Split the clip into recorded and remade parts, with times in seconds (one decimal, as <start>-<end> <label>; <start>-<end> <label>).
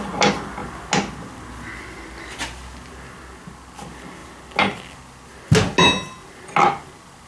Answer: 0.0-7.3 recorded